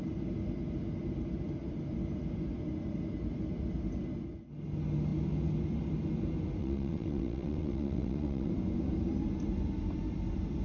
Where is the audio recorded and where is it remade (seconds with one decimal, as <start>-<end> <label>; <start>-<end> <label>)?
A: 0.0-6.6 recorded; 6.6-8.5 remade; 8.5-10.6 recorded